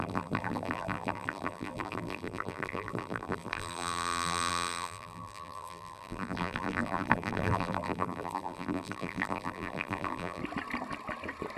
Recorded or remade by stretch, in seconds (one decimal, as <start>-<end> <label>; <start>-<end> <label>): 0.0-10.4 remade; 10.4-11.6 recorded